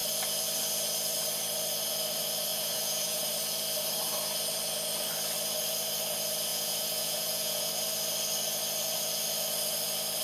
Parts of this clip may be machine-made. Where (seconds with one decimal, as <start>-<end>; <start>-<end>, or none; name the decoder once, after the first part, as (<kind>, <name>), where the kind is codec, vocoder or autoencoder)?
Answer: 2.5-3.2 (vocoder, Vocos); 6.5-7.7